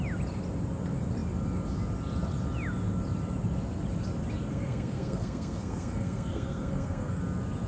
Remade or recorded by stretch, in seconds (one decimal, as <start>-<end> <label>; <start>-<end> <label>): 0.0-4.5 recorded; 4.5-7.2 remade; 7.2-7.7 recorded